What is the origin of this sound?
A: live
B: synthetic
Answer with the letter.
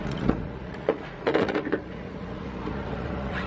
B